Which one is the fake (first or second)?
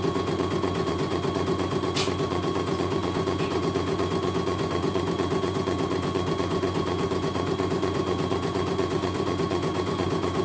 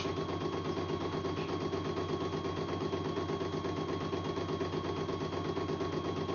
first